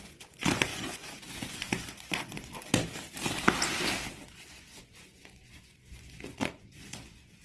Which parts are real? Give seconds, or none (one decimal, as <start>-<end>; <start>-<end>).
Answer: 2.5-4.3